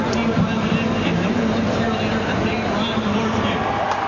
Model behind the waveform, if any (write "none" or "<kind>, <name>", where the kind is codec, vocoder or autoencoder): none